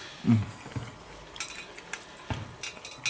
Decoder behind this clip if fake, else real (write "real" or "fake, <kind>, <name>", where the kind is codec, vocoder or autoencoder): real